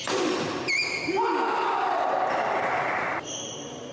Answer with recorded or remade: recorded